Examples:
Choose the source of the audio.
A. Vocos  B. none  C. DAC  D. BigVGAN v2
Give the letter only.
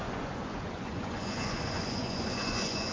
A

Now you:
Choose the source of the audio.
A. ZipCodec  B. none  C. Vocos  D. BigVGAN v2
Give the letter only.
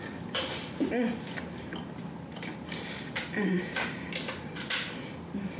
B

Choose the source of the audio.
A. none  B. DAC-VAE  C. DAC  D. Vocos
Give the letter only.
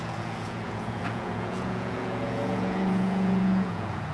D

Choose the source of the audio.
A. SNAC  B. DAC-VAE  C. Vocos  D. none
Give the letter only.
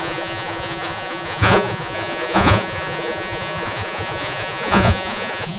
C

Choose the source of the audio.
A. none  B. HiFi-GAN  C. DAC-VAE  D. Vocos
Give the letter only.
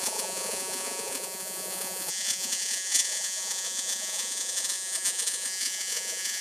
D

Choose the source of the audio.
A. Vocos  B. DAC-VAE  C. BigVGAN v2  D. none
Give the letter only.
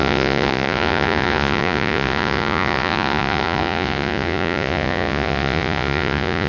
A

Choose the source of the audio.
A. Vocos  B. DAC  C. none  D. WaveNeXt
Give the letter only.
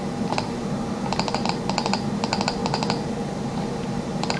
C